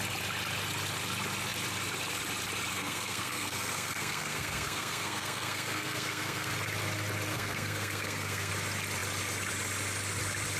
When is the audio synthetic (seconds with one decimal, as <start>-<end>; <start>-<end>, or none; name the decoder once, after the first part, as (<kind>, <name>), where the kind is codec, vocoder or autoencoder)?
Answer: 2.7-6.5 (codec, SNAC); 7.3-8.5